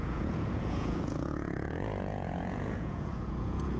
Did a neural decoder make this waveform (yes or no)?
yes